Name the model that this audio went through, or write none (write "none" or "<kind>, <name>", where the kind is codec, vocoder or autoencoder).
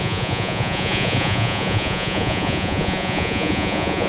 vocoder, Vocos